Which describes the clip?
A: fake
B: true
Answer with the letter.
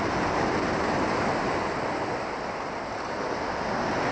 B